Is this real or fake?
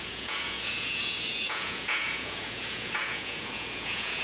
fake